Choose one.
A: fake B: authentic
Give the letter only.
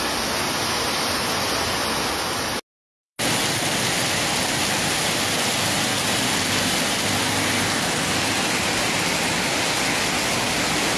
B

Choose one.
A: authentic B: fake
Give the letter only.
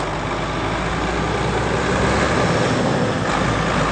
A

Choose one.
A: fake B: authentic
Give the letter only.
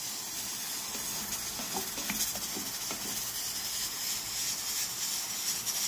B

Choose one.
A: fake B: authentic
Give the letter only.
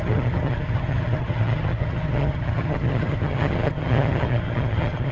A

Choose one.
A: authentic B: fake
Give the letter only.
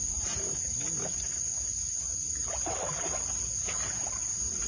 A